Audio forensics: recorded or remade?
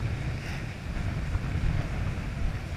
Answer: recorded